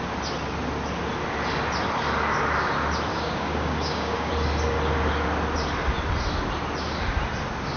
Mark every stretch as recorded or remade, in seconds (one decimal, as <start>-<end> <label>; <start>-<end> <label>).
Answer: 0.0-3.1 recorded; 3.1-4.3 remade; 4.3-7.8 recorded